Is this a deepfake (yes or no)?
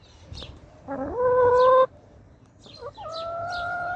no